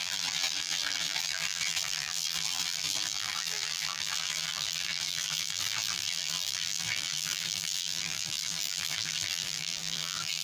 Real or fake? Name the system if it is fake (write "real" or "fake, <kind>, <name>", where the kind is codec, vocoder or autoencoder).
fake, vocoder, BigVGAN v2